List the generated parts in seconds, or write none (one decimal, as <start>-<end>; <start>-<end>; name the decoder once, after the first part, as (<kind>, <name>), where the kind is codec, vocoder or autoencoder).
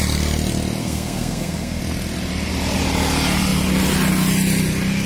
0.8-1.8 (codec, SNAC)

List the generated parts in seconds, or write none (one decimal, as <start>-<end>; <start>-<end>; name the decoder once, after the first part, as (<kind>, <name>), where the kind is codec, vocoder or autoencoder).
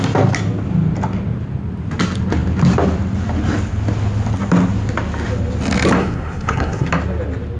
6.0-6.9 (codec, SNAC)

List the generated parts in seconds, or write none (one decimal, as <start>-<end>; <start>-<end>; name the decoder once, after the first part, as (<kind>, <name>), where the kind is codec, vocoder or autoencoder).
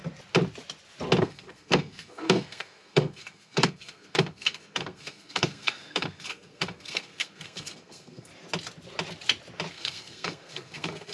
1.2-8.3 (codec, SNAC); 9.7-11.1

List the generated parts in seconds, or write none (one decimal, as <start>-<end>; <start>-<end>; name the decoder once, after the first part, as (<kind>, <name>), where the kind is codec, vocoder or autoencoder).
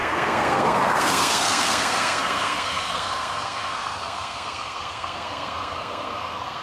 0.0-6.6 (codec, SNAC)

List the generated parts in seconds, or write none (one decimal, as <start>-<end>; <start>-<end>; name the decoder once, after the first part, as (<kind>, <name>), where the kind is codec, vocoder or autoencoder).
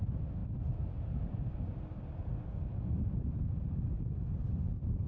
none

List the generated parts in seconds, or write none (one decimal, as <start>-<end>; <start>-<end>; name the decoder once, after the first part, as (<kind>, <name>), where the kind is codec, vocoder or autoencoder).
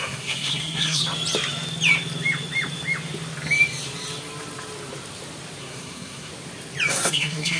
0.0-1.0 (codec, SNAC); 5.6-6.3; 6.9-7.6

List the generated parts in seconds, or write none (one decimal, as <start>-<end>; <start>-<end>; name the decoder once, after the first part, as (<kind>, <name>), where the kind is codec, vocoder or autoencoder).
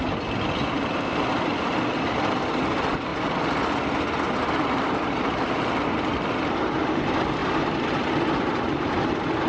none